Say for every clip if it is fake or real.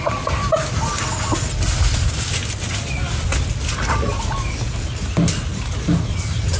real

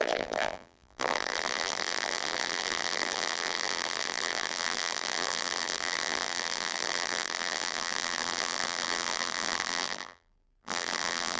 fake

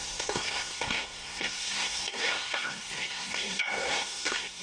fake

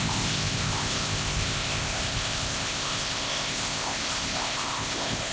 fake